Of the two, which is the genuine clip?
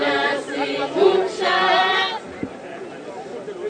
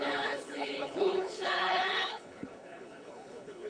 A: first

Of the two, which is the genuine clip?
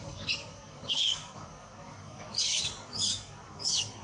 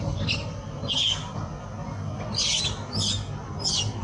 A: second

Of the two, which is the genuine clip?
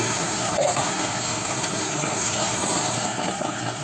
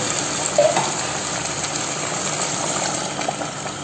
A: second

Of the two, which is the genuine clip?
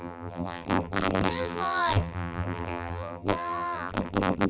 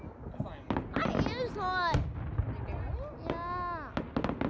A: second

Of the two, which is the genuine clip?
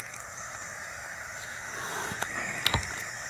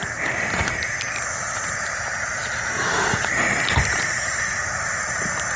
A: second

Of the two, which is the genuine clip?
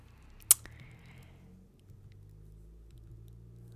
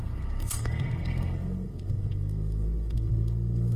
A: first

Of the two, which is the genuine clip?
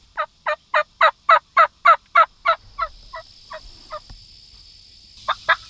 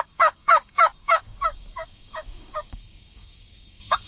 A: first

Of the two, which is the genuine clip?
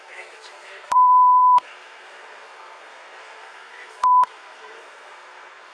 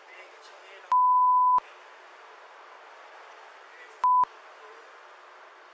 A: second